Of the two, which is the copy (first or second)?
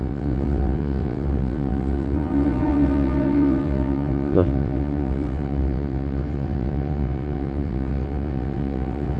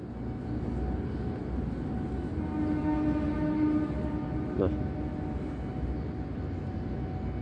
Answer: first